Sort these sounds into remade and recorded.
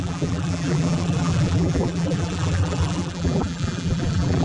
remade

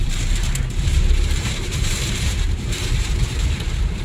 remade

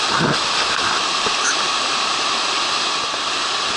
remade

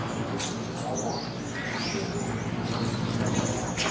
recorded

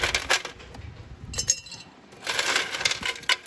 recorded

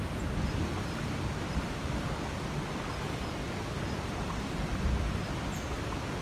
recorded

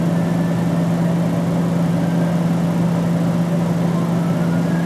recorded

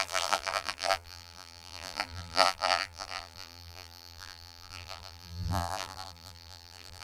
remade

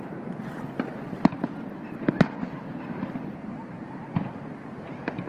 recorded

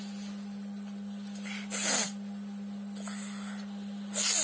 recorded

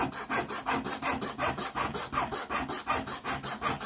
recorded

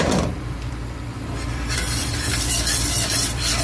remade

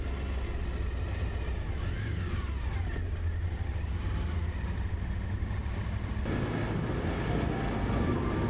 recorded